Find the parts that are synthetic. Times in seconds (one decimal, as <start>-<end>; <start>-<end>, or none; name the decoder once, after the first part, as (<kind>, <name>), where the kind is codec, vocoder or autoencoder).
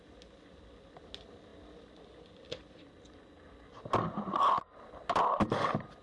none